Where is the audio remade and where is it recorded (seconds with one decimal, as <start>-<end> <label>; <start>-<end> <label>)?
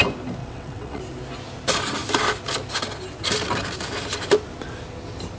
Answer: 0.0-0.4 recorded; 0.4-1.0 remade; 1.0-5.4 recorded